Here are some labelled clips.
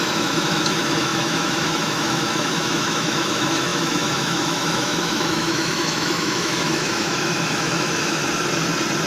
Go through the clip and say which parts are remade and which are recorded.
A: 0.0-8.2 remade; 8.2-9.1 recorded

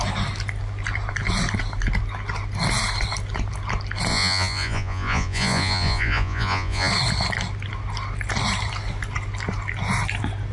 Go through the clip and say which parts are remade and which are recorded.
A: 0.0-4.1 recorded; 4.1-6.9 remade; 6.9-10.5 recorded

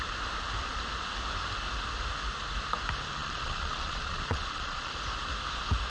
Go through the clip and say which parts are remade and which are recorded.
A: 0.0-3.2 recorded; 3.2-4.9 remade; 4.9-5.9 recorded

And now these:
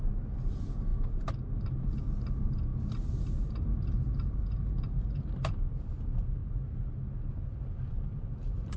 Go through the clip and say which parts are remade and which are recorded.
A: 0.0-6.4 remade; 6.4-7.9 recorded; 7.9-8.8 remade

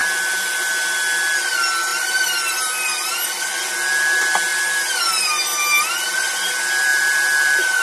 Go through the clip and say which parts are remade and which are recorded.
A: 0.0-0.7 remade; 0.7-1.9 recorded; 1.9-3.7 remade; 3.7-6.9 recorded; 6.9-7.8 remade

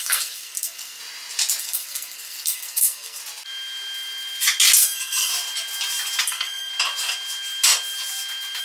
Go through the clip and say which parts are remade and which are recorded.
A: 0.0-1.0 remade; 1.0-1.6 recorded; 1.6-3.2 remade; 3.2-4.8 recorded; 4.8-5.3 remade; 5.3-6.2 recorded; 6.2-6.7 remade; 6.7-8.6 recorded

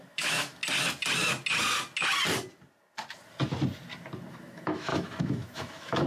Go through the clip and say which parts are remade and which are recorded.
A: 0.0-0.6 remade; 0.6-4.3 recorded; 4.3-6.1 remade

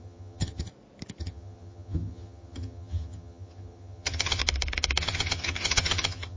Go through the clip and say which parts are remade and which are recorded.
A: 0.0-0.7 remade; 0.7-1.2 recorded; 1.2-4.4 remade; 4.4-5.0 recorded; 5.0-6.4 remade